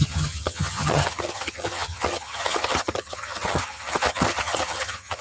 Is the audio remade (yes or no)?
yes